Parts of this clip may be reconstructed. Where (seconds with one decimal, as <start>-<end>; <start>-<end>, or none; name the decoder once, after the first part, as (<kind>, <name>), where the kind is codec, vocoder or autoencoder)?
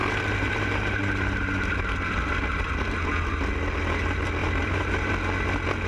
0.0-1.7 (vocoder, BigVGAN v2); 4.4-5.1